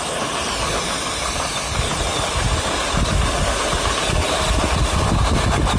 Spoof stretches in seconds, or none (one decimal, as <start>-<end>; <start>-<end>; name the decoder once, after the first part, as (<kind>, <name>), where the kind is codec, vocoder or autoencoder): none